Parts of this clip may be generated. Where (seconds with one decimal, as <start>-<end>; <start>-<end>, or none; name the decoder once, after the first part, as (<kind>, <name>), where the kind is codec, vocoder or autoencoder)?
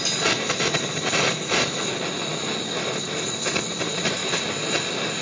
none